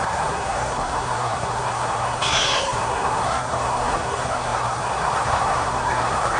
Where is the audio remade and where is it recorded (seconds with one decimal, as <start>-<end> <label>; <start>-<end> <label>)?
0.0-6.4 remade